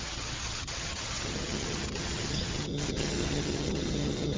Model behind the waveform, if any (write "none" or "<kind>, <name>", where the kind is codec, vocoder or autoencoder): vocoder, HiFi-GAN